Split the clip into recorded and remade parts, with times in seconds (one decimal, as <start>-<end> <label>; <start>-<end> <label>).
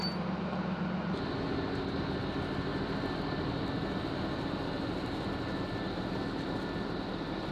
0.0-7.5 recorded